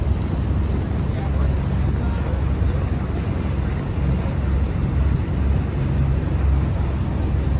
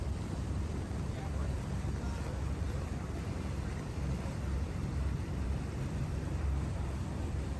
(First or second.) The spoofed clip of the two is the second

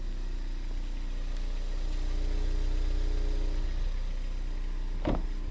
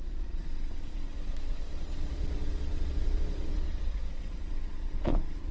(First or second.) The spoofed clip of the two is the second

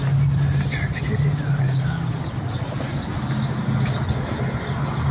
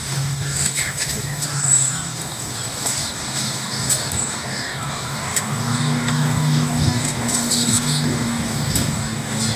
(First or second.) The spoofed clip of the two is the second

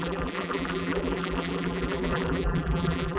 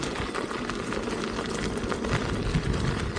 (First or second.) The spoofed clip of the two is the first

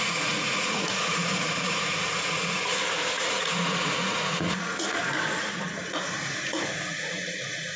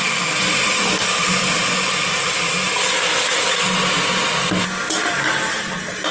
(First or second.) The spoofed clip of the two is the first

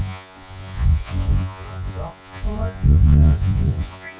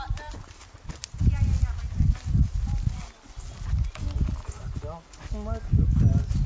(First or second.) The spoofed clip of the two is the first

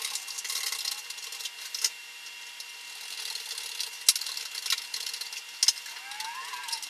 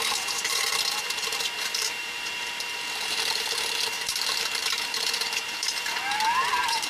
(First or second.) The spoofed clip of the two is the second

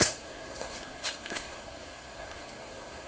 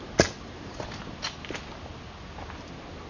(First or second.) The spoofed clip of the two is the first